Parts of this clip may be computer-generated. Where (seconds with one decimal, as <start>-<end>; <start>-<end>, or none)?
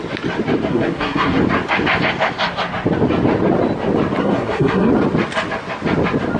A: 0.7-1.4; 4.2-4.9